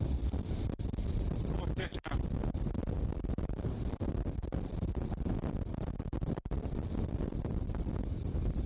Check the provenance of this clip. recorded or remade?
remade